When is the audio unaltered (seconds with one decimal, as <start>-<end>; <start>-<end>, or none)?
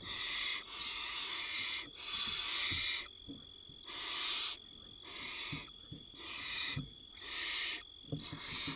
0.0-0.5; 1.9-5.6; 7.1-8.8